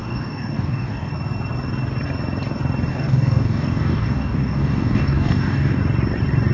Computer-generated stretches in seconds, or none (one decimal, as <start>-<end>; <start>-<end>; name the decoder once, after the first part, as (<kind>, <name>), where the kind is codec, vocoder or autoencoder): 0.0-1.1 (codec, DAC); 2.9-5.8